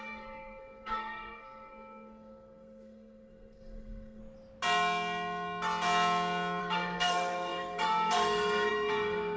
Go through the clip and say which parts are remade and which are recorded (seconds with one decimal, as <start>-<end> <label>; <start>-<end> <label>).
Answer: 0.0-4.2 remade; 4.2-6.6 recorded; 6.6-9.4 remade